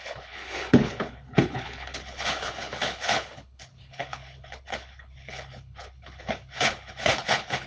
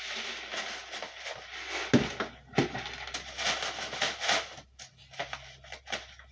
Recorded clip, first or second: second